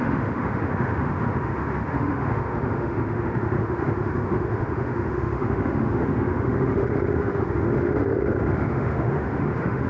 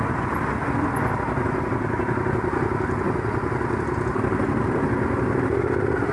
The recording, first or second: second